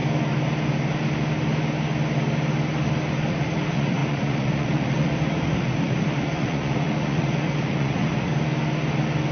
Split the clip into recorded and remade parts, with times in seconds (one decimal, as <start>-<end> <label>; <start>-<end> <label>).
0.0-3.3 recorded; 3.3-8.3 remade; 8.3-9.3 recorded